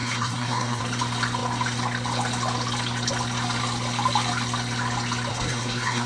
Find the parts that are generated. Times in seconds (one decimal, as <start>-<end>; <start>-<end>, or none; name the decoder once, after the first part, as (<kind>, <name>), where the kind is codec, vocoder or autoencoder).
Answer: 0.0-0.8 (codec, SNAC); 5.3-6.1